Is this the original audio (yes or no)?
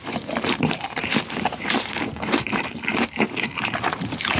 no